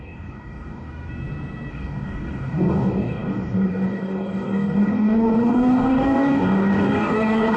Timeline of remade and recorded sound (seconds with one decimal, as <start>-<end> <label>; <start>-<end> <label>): 0.0-0.9 remade; 0.9-1.7 recorded; 1.7-7.6 remade